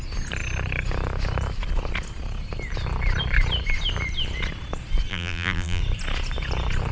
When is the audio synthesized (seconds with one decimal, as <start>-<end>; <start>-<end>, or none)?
5.1-5.8